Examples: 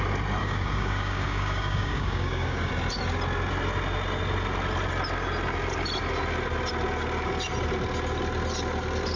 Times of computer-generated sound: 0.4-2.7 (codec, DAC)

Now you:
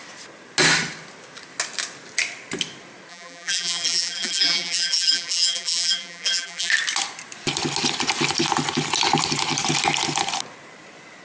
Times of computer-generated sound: 3.1-6.7 (vocoder, BigVGAN v2)

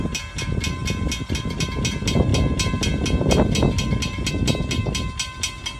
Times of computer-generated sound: none